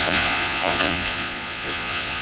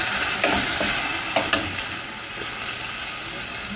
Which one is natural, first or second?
second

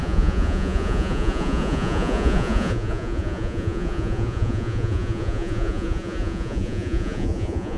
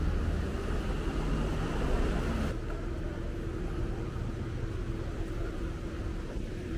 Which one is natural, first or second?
second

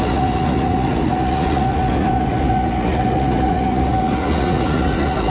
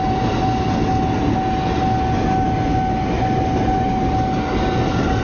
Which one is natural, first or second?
second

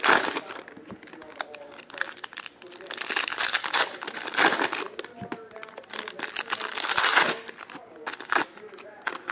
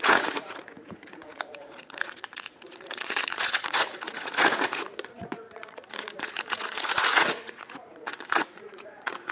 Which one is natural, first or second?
first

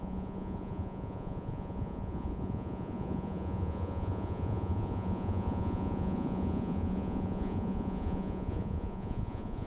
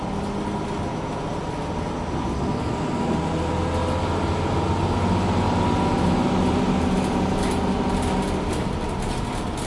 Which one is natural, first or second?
second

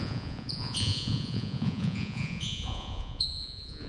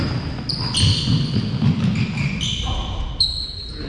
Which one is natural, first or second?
second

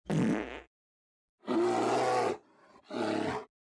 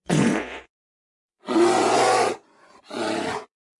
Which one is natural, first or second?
first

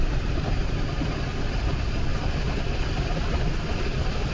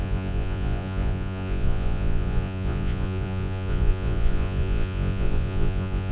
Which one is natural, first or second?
first